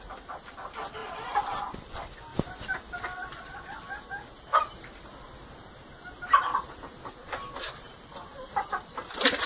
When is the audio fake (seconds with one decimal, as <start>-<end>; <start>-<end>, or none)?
none